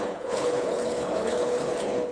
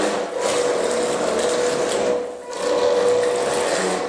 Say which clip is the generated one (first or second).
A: first